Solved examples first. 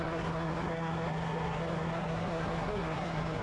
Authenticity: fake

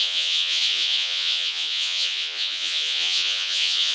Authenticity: fake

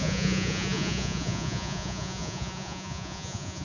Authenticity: fake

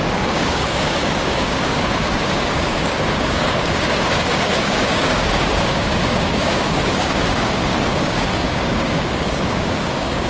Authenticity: fake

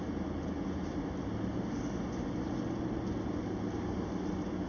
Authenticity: real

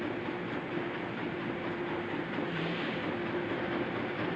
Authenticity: fake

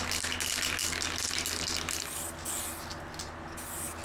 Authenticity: real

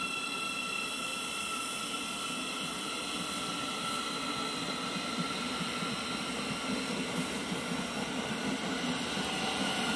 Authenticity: real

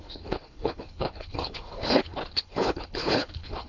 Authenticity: fake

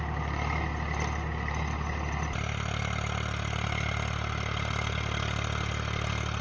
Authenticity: real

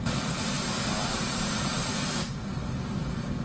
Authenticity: real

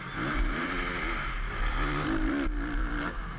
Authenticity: real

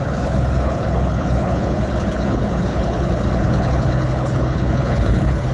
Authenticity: fake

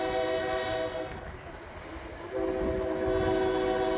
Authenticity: real